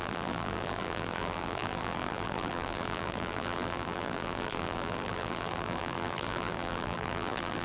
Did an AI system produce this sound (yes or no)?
yes